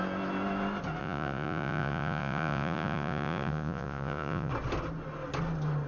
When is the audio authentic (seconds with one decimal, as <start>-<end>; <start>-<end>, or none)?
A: 0.0-1.0; 4.5-5.9